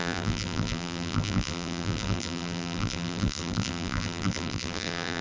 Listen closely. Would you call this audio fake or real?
fake